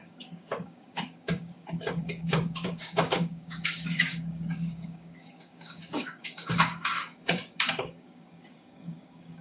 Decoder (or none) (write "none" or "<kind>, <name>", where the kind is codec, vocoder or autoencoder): codec, DAC